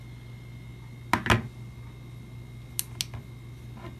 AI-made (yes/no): no